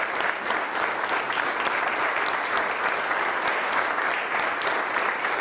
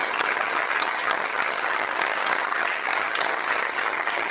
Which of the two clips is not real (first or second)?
second